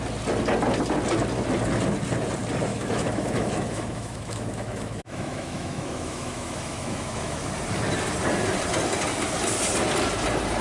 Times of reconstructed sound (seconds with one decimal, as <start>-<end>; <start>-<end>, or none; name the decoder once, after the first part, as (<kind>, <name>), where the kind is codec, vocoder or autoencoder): 2.7-7.5 (autoencoder, DAC-VAE)